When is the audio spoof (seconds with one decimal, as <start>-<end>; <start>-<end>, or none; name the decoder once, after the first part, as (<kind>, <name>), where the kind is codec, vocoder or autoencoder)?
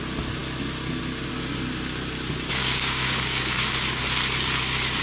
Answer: 2.6-4.0 (codec, DAC)